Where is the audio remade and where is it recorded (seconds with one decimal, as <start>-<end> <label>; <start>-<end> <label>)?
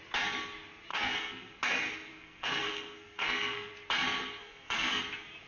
0.0-0.9 recorded; 0.9-1.6 remade; 1.6-2.1 recorded; 2.1-3.7 remade; 3.7-4.4 recorded; 4.4-5.0 remade; 5.0-5.5 recorded